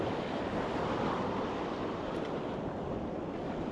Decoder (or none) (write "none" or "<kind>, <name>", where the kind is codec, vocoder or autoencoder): vocoder, BigVGAN v2